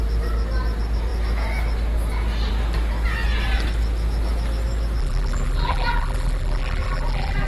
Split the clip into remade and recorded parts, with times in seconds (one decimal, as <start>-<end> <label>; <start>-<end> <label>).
0.0-5.0 recorded; 5.0-7.5 remade